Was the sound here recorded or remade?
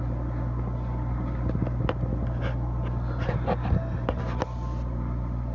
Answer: recorded